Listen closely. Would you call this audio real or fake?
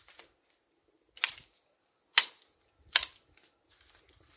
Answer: real